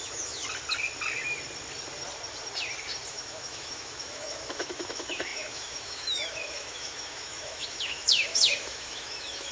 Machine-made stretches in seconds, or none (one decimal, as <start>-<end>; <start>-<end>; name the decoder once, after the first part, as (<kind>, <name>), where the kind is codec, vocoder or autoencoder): 0.0-0.4 (autoencoder, DAC-VAE); 3.1-9.5